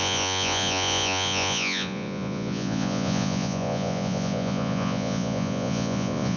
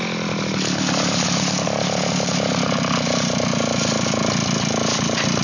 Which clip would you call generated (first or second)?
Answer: first